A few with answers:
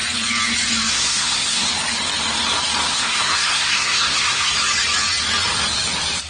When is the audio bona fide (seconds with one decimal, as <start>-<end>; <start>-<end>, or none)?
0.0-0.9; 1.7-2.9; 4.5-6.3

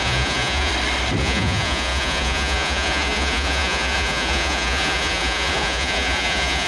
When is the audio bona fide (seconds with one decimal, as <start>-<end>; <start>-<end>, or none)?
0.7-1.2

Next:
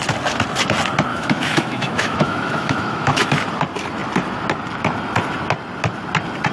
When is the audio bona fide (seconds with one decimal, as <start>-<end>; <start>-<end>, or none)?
0.0-1.1; 3.3-6.5

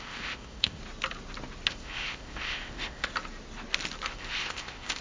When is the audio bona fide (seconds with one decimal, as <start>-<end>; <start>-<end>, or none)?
0.8-1.7; 3.1-4.1